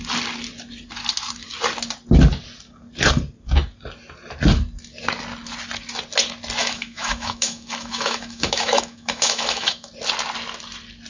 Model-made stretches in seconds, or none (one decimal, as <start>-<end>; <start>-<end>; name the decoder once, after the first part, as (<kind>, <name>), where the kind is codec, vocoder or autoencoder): 6.6-9.9 (autoencoder, DAC-VAE)